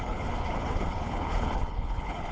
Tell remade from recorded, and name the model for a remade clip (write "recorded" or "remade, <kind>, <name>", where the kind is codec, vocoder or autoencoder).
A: remade, codec, HILCodec